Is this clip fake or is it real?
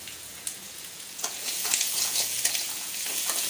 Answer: fake